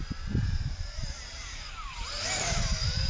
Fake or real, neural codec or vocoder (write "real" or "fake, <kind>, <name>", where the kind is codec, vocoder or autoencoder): fake, vocoder, BigVGAN v2